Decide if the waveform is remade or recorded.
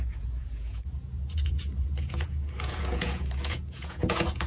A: remade